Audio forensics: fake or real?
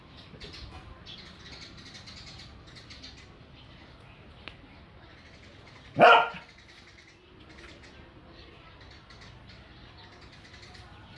real